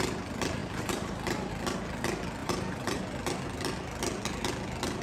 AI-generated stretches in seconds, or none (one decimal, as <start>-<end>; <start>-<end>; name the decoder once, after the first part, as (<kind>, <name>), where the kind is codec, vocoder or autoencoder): 0.6-1.5 (vocoder, BigVGAN v2); 2.4-3.0

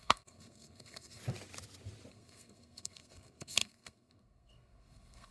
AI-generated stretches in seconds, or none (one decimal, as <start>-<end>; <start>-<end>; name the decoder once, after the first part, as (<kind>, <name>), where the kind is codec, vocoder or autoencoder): 0.0-1.2 (codec, SNAC); 2.1-5.3

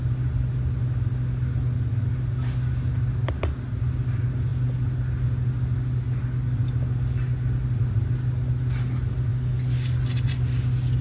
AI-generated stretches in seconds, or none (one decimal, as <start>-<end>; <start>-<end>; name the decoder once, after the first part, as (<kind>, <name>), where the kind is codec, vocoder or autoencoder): none

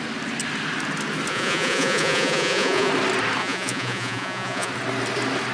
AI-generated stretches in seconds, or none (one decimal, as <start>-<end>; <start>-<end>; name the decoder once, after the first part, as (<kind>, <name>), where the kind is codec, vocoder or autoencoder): 1.3-2.9 (vocoder, Vocos); 3.4-4.7

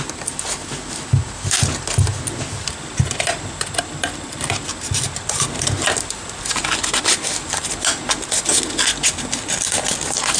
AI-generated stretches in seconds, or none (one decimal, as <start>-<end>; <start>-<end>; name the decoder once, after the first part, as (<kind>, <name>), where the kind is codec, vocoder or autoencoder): none

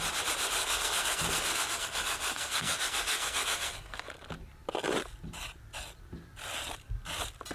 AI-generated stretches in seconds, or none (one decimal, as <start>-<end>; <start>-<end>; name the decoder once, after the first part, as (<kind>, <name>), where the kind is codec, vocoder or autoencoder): 0.6-4.0 (codec, SNAC)